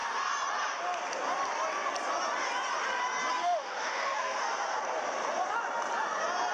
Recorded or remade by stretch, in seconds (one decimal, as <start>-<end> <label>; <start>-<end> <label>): 0.0-3.4 recorded; 3.4-4.4 remade; 4.4-6.5 recorded